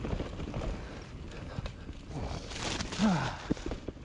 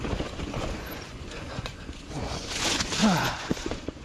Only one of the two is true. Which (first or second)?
first